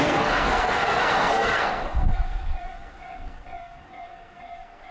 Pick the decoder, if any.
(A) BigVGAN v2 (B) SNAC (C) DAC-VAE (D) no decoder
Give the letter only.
B